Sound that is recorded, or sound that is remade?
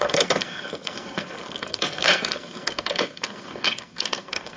remade